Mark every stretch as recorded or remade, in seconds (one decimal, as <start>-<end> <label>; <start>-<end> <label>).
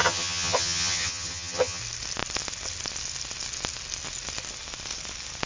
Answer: 0.0-1.8 remade; 1.8-5.5 recorded